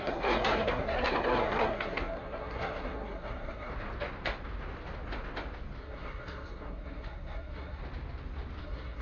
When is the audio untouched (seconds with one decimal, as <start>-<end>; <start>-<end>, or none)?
3.7-5.8; 7.8-8.6